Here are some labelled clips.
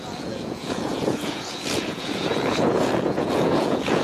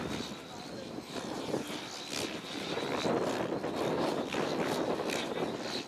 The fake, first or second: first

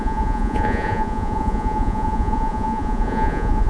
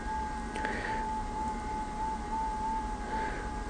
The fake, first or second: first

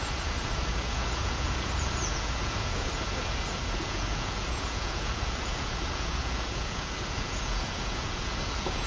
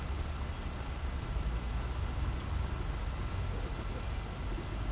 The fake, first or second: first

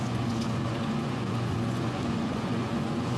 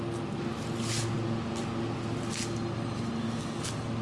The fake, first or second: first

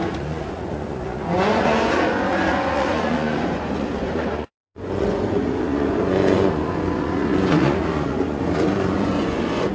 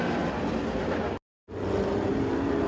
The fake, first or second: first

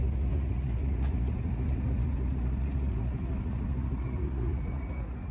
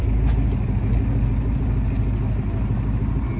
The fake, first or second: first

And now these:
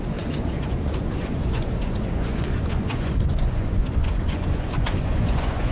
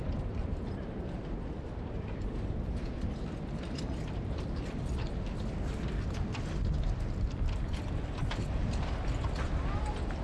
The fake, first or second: first